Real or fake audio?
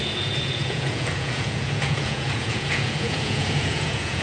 fake